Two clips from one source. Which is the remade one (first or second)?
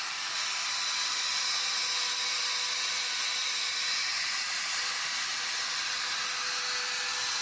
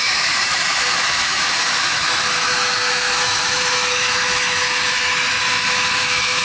second